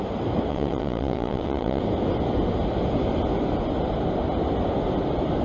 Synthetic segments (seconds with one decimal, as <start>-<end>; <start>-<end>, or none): 0.5-1.8